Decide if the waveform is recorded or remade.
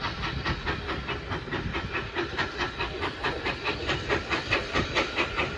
recorded